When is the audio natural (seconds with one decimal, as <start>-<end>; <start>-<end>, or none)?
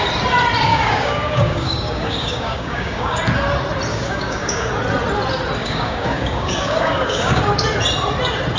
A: 0.0-0.7; 3.2-3.9; 4.7-5.6; 7.4-8.6